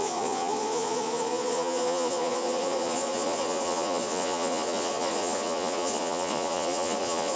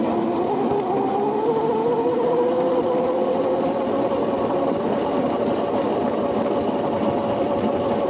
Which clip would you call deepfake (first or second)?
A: first